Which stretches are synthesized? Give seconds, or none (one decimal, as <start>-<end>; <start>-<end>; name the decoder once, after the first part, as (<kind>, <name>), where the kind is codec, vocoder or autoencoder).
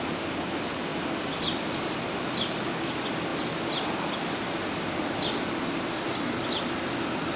0.9-2.5 (vocoder, BigVGAN v2); 3.3-5.1